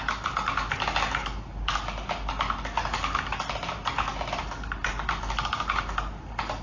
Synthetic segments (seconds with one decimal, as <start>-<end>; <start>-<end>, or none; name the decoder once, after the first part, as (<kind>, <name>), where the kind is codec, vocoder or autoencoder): none